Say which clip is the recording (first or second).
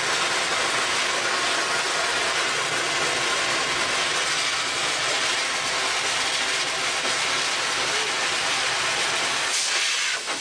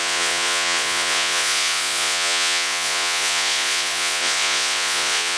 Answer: first